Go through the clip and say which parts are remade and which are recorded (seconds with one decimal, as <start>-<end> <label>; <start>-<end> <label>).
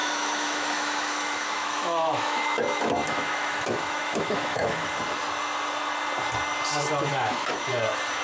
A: 0.0-4.9 remade; 4.9-7.1 recorded; 7.1-7.7 remade; 7.7-8.2 recorded